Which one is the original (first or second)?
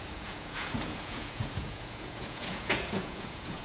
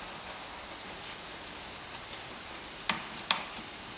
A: second